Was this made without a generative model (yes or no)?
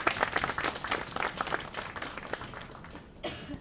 yes